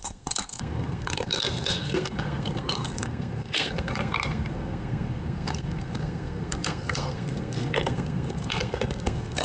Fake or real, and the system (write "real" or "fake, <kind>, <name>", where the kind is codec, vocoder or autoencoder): fake, codec, SNAC